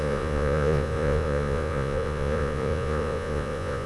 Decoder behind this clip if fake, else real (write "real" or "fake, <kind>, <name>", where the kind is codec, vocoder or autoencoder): fake, vocoder, Vocos